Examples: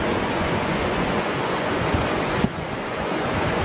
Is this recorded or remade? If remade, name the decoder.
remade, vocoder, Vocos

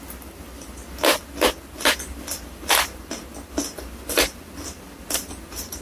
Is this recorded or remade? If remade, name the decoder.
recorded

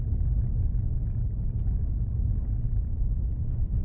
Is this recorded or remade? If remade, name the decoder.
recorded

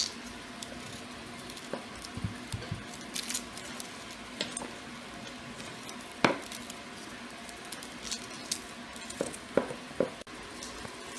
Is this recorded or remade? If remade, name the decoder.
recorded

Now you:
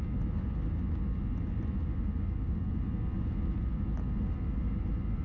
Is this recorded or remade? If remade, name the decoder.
recorded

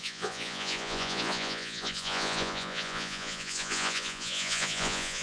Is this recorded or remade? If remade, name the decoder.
remade, vocoder, Vocos